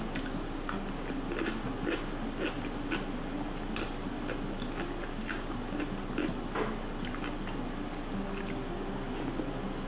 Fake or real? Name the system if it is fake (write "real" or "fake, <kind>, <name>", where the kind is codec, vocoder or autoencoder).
real